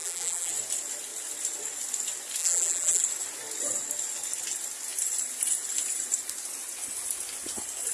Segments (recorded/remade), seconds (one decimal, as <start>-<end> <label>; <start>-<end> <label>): 0.0-0.5 remade; 0.5-2.4 recorded; 2.4-3.0 remade; 3.0-7.9 recorded